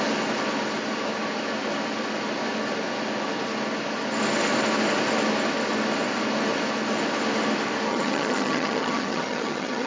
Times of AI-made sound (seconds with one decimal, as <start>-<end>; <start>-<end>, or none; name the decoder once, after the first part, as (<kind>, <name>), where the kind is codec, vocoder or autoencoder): 7.9-9.9 (vocoder, HiFi-GAN)